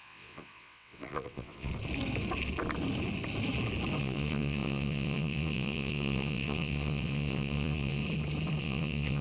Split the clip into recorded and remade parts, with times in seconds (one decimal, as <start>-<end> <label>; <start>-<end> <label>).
0.0-1.7 remade; 1.7-4.0 recorded; 4.0-8.0 remade; 8.0-8.6 recorded; 8.6-9.2 remade